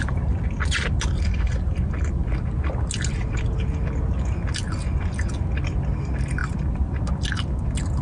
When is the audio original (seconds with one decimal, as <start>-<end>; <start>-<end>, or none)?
0.0-8.0